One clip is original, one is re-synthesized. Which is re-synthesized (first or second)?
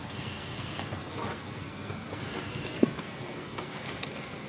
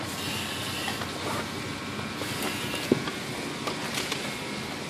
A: first